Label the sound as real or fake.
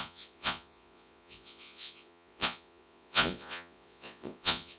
fake